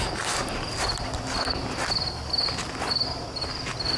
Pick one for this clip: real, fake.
real